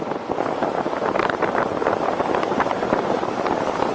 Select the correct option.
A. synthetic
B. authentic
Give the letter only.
B